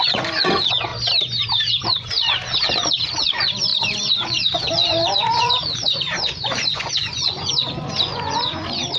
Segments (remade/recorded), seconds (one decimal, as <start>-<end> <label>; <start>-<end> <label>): 0.0-0.9 remade; 0.9-1.7 recorded; 1.7-9.0 remade